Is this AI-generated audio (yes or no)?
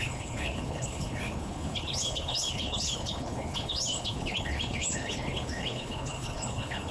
yes